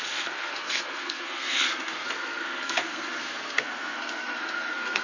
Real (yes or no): no